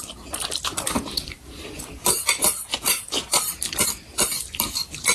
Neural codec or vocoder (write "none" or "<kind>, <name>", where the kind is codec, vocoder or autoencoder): vocoder, BigVGAN v2